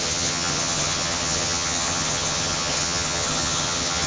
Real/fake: fake